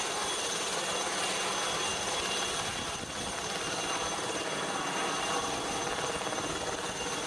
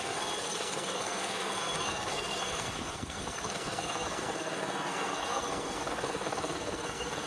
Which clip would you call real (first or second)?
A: first